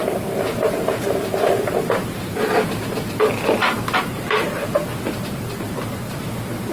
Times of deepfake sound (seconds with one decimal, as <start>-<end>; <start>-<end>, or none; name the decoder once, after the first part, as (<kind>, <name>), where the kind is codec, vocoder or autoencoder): 0.0-2.7 (vocoder, BigVGAN v2); 3.6-6.2

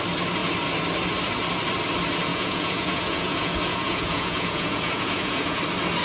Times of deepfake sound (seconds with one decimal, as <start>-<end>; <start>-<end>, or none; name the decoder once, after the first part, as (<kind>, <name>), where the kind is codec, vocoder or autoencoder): 2.3-5.6 (vocoder, Vocos)

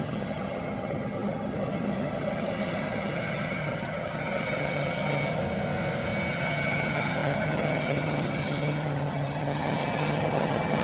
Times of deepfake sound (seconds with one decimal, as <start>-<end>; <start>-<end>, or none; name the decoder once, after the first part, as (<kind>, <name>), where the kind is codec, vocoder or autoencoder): 0.0-5.4 (vocoder, HiFi-GAN); 6.3-10.8

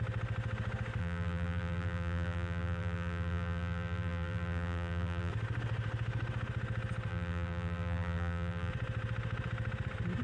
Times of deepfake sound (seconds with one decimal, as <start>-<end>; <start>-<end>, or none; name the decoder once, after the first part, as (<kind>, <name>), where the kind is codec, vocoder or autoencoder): 1.0-5.3 (vocoder, BigVGAN v2); 7.1-8.7

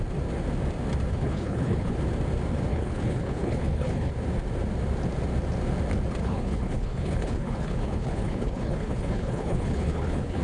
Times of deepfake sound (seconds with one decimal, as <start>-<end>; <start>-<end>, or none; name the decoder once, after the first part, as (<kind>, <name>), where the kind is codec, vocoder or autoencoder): 1.1-1.9 (codec, HILCodec); 2.7-4.1; 6.2-10.4

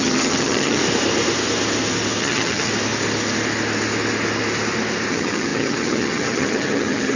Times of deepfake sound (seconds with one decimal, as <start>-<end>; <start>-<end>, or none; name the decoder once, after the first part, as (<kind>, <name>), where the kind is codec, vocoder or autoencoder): 0.0-0.8 (vocoder, HiFi-GAN); 2.2-2.7; 5.1-7.2

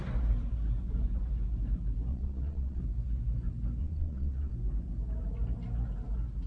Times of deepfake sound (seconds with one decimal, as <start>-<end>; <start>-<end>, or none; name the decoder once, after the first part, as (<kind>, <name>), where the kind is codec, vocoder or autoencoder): 2.1-2.8 (vocoder, Vocos); 3.8-4.5